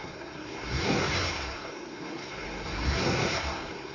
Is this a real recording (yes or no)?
no